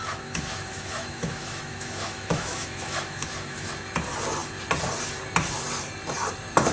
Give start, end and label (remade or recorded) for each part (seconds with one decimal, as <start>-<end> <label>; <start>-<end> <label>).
0.0-3.7 remade; 3.7-6.7 recorded